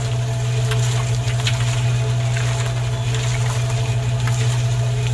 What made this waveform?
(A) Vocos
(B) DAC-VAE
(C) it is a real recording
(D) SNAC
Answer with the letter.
C